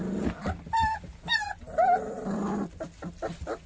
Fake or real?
fake